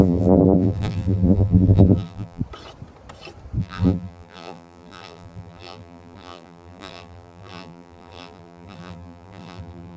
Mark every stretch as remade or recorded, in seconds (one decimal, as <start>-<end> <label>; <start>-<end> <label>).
0.0-2.4 remade; 2.4-3.6 recorded; 3.6-10.0 remade